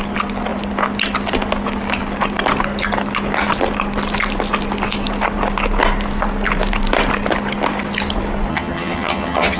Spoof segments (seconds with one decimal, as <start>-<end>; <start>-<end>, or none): 8.5-9.6